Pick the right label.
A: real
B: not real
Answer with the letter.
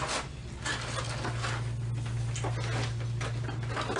A